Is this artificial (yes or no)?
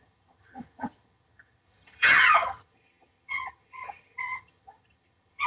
yes